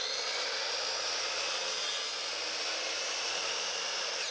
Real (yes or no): yes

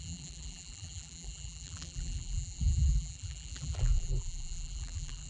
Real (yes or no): no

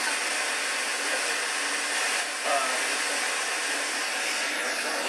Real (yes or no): yes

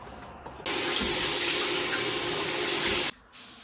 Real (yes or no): yes